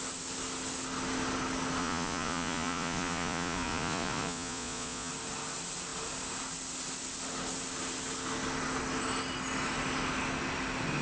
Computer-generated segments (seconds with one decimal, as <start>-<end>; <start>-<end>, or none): 1.8-5.1